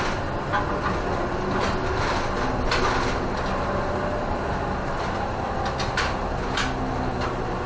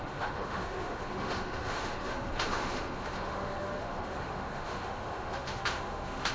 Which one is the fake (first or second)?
second